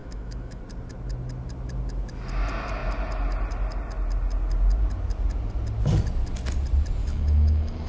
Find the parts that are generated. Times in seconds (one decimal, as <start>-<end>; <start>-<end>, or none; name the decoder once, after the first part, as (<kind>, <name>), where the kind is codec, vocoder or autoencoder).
0.0-0.6 (autoencoder, DAC-VAE); 7.0-7.9